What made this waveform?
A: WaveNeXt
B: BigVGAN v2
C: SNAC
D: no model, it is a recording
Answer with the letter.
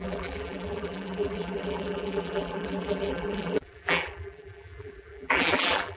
B